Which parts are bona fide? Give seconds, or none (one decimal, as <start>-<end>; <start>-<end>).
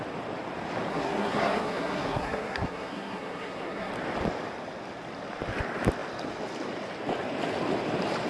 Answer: 0.0-0.9; 3.9-8.3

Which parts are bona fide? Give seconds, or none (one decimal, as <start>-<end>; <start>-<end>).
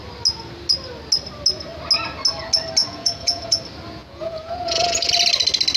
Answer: 0.0-2.8; 3.6-4.0; 5.1-5.8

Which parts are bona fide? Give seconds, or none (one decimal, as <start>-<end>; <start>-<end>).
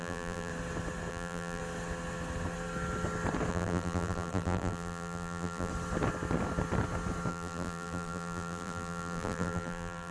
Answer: 0.5-1.1; 1.6-3.5; 5.7-7.3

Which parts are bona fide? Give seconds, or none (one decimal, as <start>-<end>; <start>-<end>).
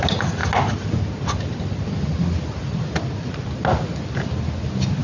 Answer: 0.0-5.0